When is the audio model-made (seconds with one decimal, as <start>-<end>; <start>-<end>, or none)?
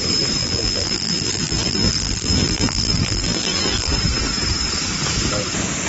0.4-3.9